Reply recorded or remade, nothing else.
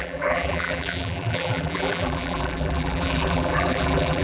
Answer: remade